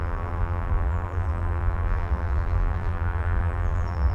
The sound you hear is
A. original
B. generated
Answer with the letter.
B